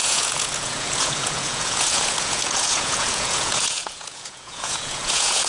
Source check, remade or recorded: remade